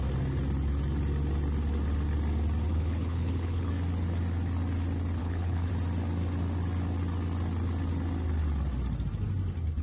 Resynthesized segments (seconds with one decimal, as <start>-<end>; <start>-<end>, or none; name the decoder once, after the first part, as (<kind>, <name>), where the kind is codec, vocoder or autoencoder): 2.7-3.7 (codec, HILCodec); 5.2-5.7

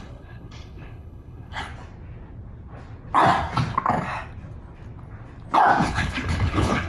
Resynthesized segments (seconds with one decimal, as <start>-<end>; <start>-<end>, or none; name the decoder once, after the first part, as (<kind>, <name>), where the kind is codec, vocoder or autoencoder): 0.0-1.7 (codec, HILCodec); 5.8-6.9

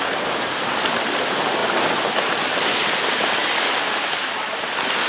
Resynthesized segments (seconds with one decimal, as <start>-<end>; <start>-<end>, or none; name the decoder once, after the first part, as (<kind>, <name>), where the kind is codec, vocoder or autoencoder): none

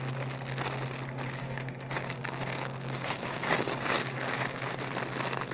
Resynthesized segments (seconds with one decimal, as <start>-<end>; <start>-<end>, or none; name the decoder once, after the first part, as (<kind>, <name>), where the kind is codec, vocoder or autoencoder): 1.4-4.7 (codec, DAC)

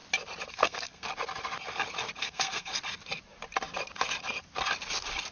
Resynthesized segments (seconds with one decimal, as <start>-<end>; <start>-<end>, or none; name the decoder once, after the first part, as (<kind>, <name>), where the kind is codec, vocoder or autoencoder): 0.5-1.1 (codec, SNAC); 2.2-2.7